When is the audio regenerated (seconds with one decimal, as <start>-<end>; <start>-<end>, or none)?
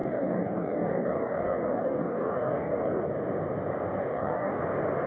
0.0-3.1; 4.0-4.6